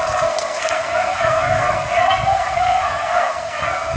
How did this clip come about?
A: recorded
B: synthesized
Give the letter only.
B